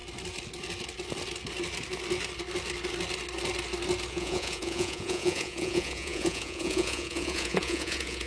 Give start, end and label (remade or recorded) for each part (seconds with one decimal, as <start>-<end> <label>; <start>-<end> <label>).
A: 0.0-4.1 recorded; 4.1-8.3 remade